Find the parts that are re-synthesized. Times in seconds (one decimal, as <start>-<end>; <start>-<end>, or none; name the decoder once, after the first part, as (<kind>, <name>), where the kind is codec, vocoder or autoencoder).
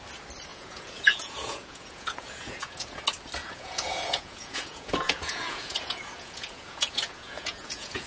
0.5-3.0 (vocoder, Vocos); 3.4-8.1